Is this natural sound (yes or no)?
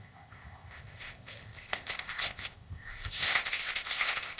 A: no